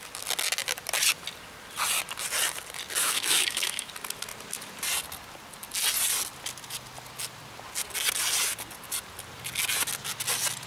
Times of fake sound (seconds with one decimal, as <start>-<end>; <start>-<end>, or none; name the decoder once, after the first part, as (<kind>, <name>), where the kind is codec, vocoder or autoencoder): 3.0-3.9 (autoencoder, DAC-VAE)